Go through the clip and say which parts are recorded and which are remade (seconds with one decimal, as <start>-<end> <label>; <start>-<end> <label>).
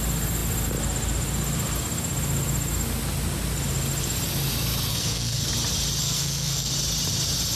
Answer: 0.0-4.9 recorded; 4.9-5.5 remade; 5.5-6.0 recorded; 6.0-6.7 remade; 6.7-7.6 recorded